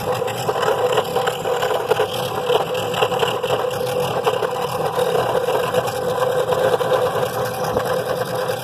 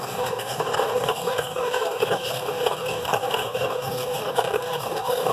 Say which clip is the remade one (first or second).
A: second